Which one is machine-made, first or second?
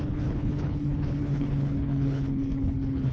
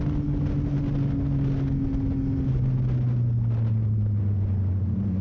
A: first